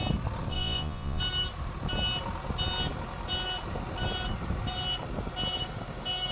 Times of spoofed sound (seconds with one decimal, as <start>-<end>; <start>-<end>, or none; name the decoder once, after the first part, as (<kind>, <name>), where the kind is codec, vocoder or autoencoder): 0.5-1.2 (vocoder, Vocos)